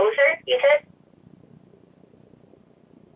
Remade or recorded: recorded